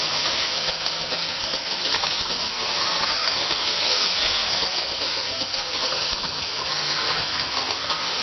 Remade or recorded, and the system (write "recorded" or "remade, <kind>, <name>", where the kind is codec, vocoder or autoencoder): remade, codec, SNAC